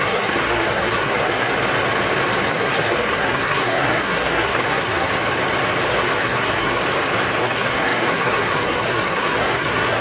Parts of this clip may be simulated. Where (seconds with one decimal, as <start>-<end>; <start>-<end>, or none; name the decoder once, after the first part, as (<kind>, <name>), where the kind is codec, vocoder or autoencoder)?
0.0-1.5 (codec, SNAC); 2.5-5.1; 5.9-6.8; 7.4-10.0